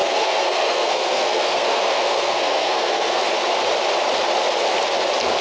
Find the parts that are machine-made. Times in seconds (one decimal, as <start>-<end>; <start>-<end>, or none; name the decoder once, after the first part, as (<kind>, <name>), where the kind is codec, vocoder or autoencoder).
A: 0.0-3.2 (codec, SNAC)